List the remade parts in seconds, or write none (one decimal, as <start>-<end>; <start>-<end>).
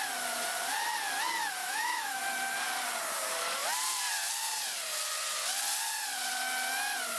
1.6-2.2